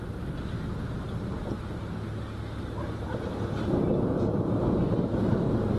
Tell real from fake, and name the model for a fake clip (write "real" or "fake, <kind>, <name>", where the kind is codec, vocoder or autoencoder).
real